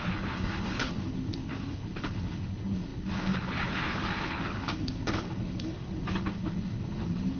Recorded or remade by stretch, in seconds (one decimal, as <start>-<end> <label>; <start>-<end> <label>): 0.0-7.4 remade